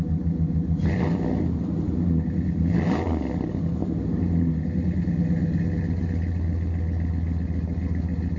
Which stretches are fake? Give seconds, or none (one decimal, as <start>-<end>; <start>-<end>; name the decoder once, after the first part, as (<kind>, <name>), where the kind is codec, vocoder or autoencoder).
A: 3.8-4.5 (vocoder, BigVGAN v2)